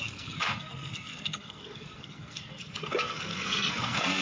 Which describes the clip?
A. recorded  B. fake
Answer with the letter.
B